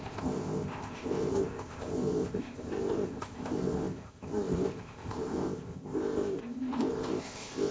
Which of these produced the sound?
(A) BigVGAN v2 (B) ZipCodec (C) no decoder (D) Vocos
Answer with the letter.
B